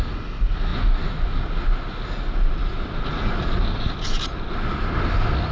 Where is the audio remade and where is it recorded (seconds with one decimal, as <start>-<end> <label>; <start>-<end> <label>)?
0.0-5.5 recorded